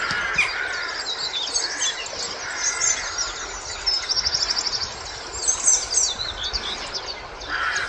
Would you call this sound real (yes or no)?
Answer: yes